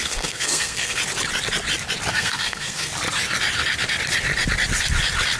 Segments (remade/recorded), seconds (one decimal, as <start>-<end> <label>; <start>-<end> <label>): 0.0-1.0 remade; 1.0-2.1 recorded; 2.1-2.9 remade; 2.9-5.4 recorded